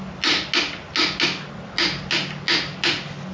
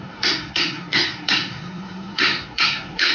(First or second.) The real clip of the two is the first